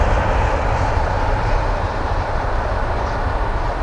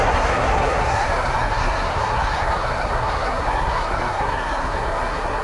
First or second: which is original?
first